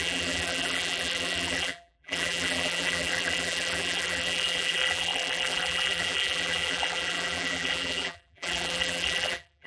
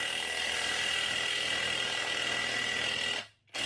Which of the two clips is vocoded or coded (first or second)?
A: first